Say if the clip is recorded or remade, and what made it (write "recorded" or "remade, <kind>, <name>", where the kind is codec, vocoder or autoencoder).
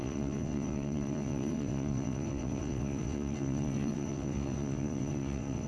remade, vocoder, WaveNeXt